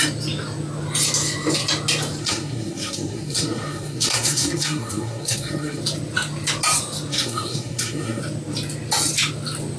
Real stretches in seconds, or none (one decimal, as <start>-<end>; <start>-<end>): 0.0-2.2; 5.8-7.1; 8.2-9.8